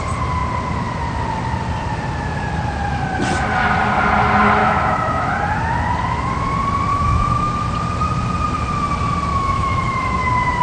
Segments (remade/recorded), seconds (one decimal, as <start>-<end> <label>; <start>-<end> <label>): 0.0-4.6 recorded; 4.6-5.3 remade; 5.3-6.9 recorded; 6.9-7.6 remade; 7.6-9.3 recorded; 9.3-10.2 remade; 10.2-10.6 recorded